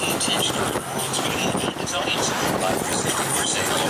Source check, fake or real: fake